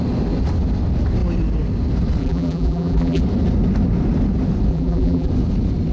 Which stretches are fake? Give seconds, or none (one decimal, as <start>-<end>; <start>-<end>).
2.2-3.2; 4.7-5.3